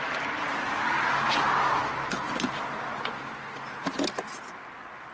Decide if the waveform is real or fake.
real